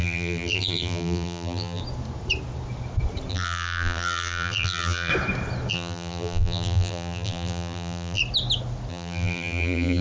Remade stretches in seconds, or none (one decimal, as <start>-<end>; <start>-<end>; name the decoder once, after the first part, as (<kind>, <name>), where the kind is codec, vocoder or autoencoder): 0.0-1.8 (vocoder, BigVGAN v2); 3.3-5.1; 5.7-8.2; 8.9-10.0

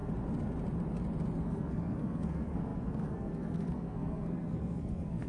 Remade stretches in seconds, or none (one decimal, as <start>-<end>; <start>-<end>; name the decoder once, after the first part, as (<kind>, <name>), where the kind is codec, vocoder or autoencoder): 1.4-5.3 (codec, SNAC)

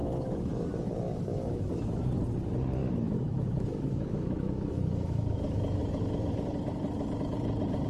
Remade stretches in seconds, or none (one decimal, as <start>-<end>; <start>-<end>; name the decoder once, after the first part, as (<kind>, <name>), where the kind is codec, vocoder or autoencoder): 0.0-2.0 (autoencoder, DAC-VAE); 2.8-5.8

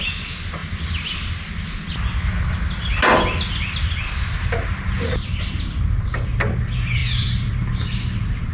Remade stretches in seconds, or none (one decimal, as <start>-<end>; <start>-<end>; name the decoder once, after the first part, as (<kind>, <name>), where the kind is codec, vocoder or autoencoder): none

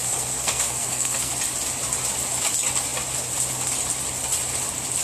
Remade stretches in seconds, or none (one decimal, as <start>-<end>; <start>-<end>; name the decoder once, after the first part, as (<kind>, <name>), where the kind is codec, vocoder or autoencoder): 0.0-1.3 (codec, SNAC)